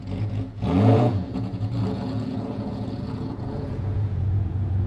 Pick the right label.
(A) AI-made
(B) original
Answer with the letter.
A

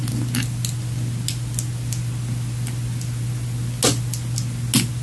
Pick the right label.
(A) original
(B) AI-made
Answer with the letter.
A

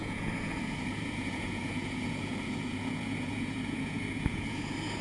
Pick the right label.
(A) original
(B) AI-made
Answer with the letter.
B